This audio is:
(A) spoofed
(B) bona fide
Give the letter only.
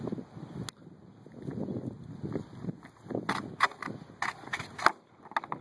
B